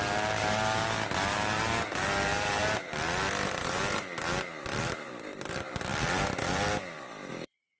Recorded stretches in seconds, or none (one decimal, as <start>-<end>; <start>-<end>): 0.0-7.8